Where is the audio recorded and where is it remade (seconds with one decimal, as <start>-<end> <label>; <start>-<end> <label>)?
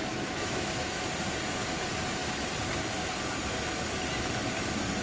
0.0-1.0 remade; 1.0-5.0 recorded